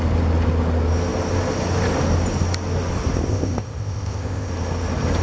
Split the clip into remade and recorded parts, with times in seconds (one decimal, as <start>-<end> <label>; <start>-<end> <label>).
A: 0.0-3.3 recorded; 3.3-4.5 remade; 4.5-5.2 recorded